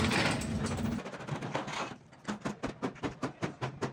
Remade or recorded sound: recorded